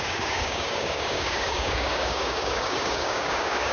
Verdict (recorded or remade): remade